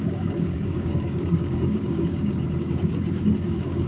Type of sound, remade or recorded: remade